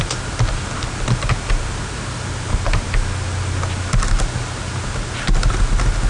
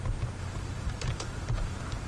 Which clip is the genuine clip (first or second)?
first